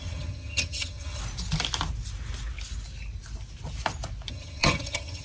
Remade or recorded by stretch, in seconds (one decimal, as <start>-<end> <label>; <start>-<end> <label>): 0.0-1.2 remade; 1.2-4.3 recorded; 4.3-5.2 remade